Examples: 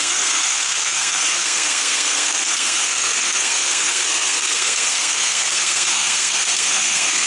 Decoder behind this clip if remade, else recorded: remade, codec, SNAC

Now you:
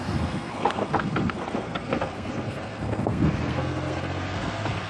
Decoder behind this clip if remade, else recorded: remade, codec, SNAC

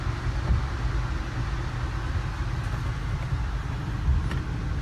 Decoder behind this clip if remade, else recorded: recorded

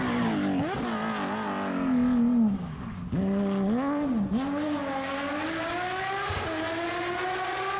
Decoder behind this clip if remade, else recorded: recorded